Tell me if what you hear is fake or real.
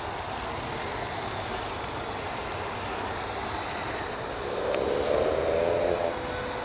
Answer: real